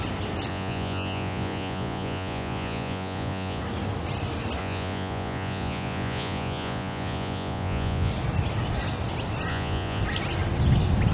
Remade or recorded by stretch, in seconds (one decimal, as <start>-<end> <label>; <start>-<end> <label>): 0.0-0.5 recorded; 0.5-3.6 remade; 3.6-4.6 recorded; 4.6-8.1 remade; 8.1-9.5 recorded; 9.5-10.0 remade; 10.0-11.1 recorded

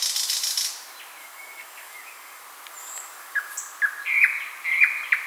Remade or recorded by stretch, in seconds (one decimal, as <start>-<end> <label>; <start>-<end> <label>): 0.0-1.2 recorded; 1.2-2.4 remade; 2.4-2.8 recorded; 2.8-3.5 remade; 3.5-5.3 recorded

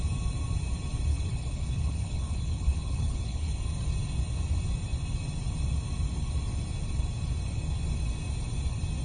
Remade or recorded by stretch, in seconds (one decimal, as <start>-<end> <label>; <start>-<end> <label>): 0.0-1.1 recorded; 1.1-3.6 remade; 3.6-9.0 recorded

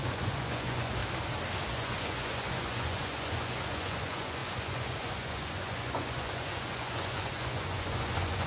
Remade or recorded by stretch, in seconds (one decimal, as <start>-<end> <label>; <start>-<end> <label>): 0.0-1.0 remade; 1.0-1.7 recorded; 1.7-8.5 remade

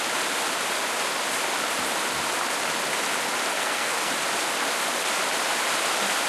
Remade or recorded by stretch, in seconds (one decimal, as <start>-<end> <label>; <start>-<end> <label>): 0.0-3.5 recorded; 3.5-4.1 remade; 4.1-6.3 recorded